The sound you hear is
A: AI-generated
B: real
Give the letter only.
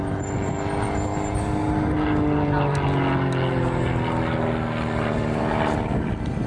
B